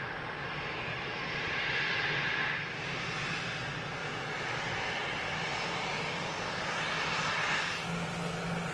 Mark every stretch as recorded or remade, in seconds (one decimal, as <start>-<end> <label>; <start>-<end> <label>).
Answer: 0.0-4.0 recorded; 4.0-4.5 remade; 4.5-8.7 recorded